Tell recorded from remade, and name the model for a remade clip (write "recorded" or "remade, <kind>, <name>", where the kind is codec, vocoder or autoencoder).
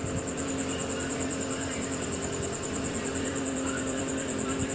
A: remade, vocoder, BigVGAN v2